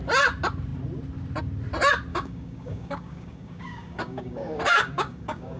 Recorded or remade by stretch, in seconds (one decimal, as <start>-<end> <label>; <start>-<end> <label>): 0.0-2.1 recorded; 2.1-5.6 remade